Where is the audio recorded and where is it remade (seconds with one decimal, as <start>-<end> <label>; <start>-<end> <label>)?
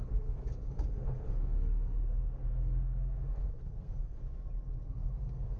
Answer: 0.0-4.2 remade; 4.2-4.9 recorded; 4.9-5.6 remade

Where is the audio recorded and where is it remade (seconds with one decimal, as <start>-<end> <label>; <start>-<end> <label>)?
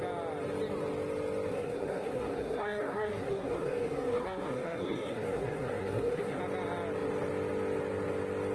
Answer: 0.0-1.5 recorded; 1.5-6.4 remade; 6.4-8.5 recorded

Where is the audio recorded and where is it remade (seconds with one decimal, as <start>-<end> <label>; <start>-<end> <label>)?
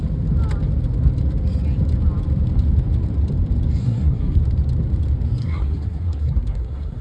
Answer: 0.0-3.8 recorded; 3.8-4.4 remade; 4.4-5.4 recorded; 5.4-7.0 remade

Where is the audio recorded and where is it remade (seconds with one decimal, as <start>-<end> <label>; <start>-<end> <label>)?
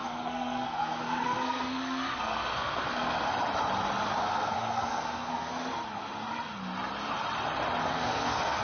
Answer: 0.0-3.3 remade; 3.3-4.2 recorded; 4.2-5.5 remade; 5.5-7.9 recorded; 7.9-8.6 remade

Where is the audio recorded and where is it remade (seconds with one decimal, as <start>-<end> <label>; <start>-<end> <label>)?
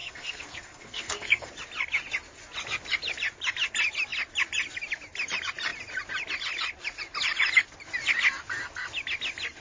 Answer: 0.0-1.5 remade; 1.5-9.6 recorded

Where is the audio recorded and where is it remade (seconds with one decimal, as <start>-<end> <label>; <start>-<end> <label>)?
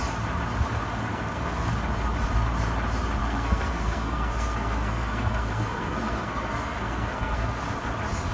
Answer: 0.0-1.1 recorded; 1.1-1.7 remade; 1.7-3.2 recorded; 3.2-7.6 remade; 7.6-8.3 recorded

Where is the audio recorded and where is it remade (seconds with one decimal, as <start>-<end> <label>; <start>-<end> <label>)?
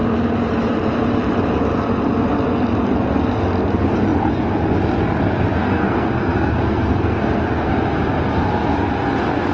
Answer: 0.0-5.6 recorded; 5.6-7.7 remade; 7.7-9.5 recorded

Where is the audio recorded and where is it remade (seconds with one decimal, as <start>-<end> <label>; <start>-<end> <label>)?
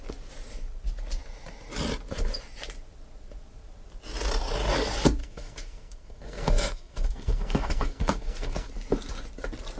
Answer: 0.0-5.2 recorded; 5.2-8.7 remade; 8.7-9.8 recorded